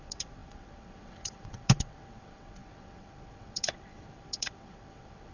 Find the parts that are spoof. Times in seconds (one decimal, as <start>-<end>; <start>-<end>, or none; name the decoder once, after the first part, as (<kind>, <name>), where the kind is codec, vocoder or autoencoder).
0.0-5.3 (vocoder, WaveNeXt)